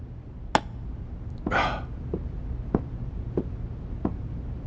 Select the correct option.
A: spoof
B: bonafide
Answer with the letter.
B